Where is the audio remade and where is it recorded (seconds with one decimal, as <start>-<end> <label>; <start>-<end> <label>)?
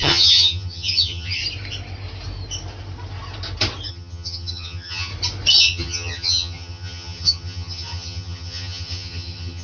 0.0-1.4 remade; 1.4-3.9 recorded; 3.9-5.1 remade; 5.1-5.6 recorded; 5.6-9.6 remade